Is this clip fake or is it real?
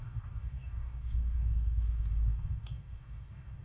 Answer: fake